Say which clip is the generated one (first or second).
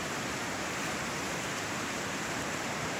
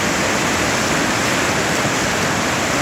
first